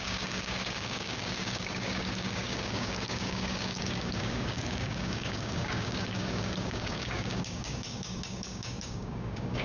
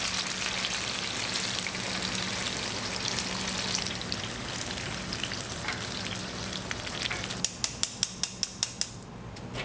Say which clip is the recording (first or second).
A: second